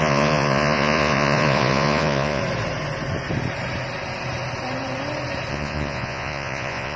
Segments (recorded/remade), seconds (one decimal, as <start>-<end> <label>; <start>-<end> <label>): 0.0-2.4 remade; 2.4-5.5 recorded; 5.5-7.0 remade